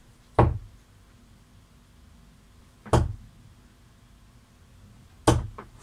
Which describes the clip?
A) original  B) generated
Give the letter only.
A